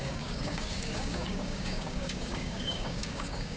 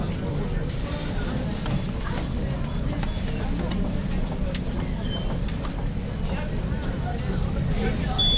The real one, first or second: second